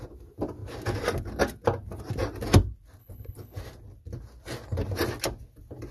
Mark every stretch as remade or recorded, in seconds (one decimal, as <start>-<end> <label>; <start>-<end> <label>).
0.0-3.0 recorded; 3.0-3.6 remade; 3.6-5.9 recorded